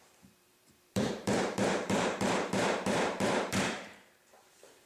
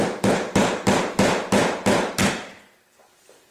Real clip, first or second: second